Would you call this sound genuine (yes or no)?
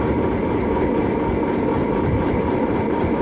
no